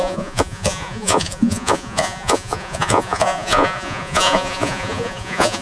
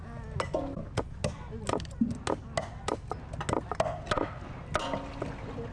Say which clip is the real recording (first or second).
second